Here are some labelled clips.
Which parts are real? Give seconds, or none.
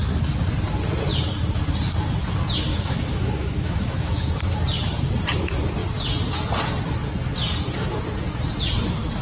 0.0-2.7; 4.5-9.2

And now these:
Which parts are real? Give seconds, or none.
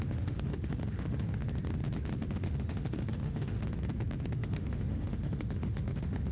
1.4-2.3; 3.6-4.2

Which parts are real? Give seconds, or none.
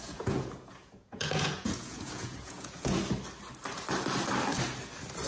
3.0-5.3